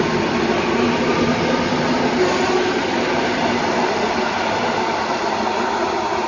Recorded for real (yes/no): yes